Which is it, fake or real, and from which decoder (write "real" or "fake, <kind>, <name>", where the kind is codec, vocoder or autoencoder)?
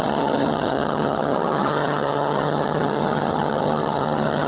fake, vocoder, HiFi-GAN